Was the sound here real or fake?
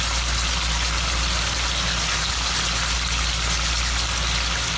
real